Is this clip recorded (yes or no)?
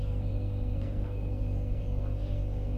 no